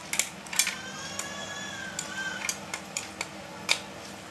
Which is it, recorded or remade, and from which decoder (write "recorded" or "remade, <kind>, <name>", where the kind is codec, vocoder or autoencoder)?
recorded